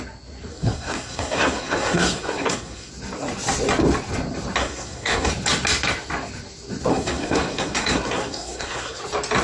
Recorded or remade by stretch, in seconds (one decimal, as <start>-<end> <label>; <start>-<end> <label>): 0.0-0.5 recorded; 0.5-2.9 remade; 2.9-4.6 recorded; 4.6-5.3 remade; 5.3-6.9 recorded; 6.9-9.0 remade; 9.0-9.4 recorded